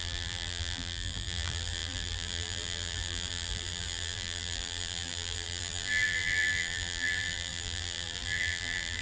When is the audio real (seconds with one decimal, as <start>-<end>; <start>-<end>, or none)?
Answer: none